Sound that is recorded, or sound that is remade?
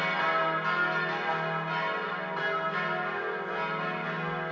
recorded